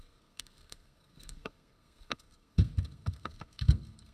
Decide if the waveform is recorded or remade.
remade